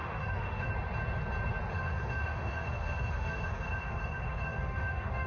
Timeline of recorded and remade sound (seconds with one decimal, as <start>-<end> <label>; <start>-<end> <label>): 0.0-0.7 remade; 0.7-1.7 recorded; 1.7-5.3 remade